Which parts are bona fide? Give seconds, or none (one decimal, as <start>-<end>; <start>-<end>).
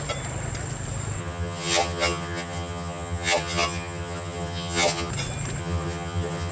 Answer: 0.0-1.2; 5.1-5.6